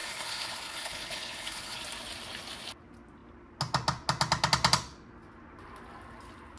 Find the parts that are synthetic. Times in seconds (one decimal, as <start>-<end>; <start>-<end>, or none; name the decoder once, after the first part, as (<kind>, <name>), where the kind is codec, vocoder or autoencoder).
0.0-1.8 (codec, HILCodec)